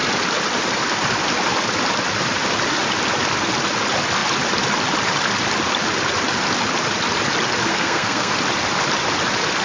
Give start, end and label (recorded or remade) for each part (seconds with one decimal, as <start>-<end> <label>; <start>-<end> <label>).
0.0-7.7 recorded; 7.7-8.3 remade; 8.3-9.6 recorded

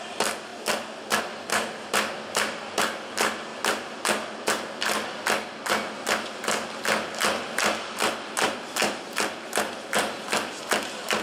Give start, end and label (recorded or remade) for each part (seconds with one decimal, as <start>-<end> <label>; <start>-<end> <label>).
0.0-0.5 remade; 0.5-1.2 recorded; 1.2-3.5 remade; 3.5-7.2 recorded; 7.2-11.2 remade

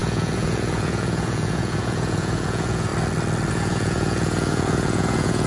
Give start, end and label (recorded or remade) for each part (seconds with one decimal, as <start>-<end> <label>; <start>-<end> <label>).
0.0-2.9 remade; 2.9-3.5 recorded; 3.5-5.5 remade

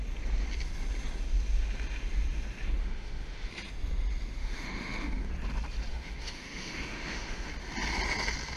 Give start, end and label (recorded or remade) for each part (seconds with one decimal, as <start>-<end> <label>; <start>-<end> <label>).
0.0-2.8 recorded; 2.8-3.5 remade; 3.5-4.4 recorded; 4.4-5.3 remade; 5.3-5.9 recorded; 5.9-7.5 remade; 7.5-8.6 recorded